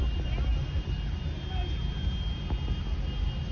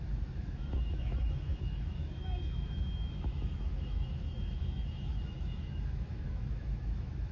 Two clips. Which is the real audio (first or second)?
first